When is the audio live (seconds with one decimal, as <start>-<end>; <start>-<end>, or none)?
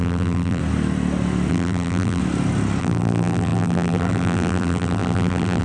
0.6-1.5; 2.2-2.8